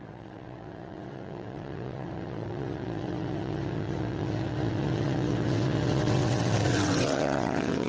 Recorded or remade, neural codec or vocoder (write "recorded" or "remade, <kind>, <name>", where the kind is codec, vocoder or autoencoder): remade, vocoder, WaveNeXt